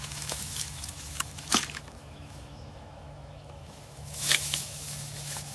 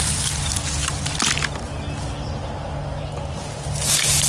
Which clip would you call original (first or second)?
second